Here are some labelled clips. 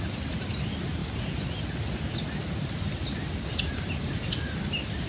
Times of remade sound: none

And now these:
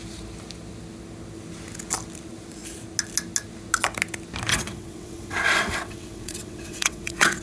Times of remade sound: 4.5-7.4 (vocoder, WaveNeXt)

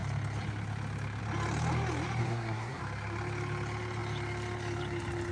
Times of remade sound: 2.2-2.8 (codec, SNAC)

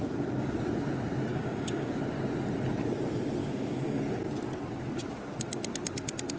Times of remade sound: 1.3-1.9 (codec, DAC); 3.4-4.0

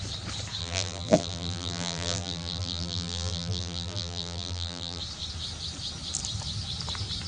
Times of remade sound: 0.6-5.0 (vocoder, BigVGAN v2)

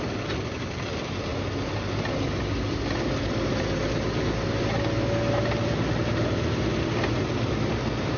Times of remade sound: none

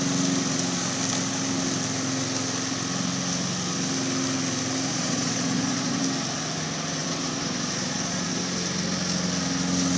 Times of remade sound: 4.9-6.0 (vocoder, Vocos); 7.0-8.4